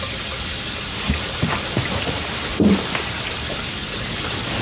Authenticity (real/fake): real